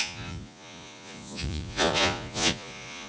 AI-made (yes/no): yes